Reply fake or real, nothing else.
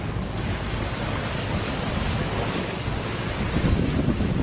fake